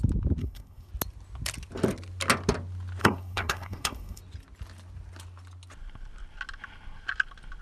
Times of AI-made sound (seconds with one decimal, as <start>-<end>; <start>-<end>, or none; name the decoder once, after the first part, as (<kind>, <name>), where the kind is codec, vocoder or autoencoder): 0.4-0.9 (codec, SNAC); 3.0-4.2